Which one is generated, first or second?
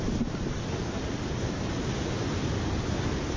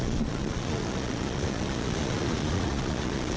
second